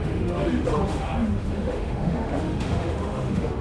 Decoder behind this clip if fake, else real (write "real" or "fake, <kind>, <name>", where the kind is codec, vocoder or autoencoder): fake, autoencoder, DAC-VAE